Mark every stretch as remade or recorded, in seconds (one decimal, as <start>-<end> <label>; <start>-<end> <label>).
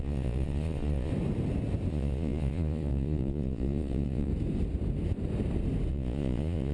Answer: 0.0-1.1 remade; 1.1-1.9 recorded; 1.9-4.3 remade; 4.3-5.9 recorded; 5.9-6.7 remade